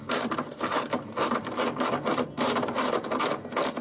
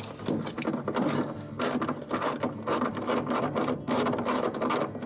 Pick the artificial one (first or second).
first